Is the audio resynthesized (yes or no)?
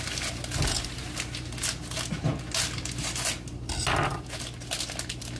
no